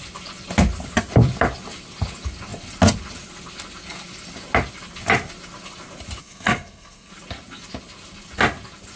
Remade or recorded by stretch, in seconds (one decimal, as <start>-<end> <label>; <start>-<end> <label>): 0.0-6.2 recorded; 6.2-7.1 remade; 7.1-9.0 recorded